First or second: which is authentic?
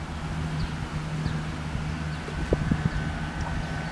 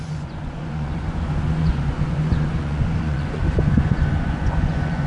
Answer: first